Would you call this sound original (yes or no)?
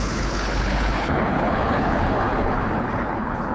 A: no